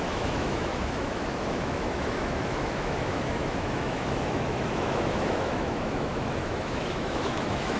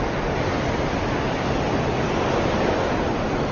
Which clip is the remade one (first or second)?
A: first